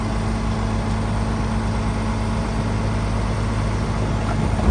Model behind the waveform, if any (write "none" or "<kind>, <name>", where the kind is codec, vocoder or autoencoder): none